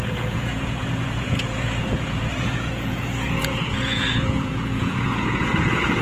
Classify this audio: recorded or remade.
remade